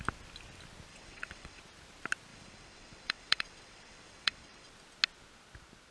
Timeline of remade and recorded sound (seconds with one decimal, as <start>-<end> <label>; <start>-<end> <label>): 0.0-0.9 recorded; 0.9-1.6 remade; 1.6-2.3 recorded; 2.3-4.7 remade; 4.7-5.9 recorded